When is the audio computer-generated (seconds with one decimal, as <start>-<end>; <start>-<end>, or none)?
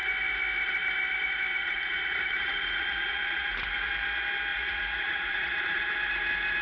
1.6-3.9; 4.5-5.8